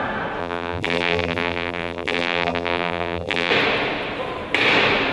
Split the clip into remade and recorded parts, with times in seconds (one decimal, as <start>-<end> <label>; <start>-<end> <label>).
0.0-0.4 recorded; 0.4-3.5 remade; 3.5-5.1 recorded